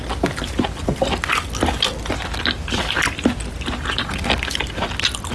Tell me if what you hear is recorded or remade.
recorded